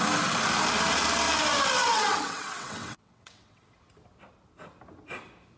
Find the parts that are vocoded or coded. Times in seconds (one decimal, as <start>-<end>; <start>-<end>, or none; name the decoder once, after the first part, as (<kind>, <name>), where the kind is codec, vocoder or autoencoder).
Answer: 1.8-3.7 (vocoder, WaveNeXt)